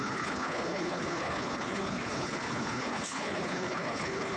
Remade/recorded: remade